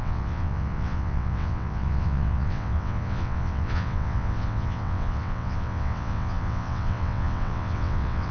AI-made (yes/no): yes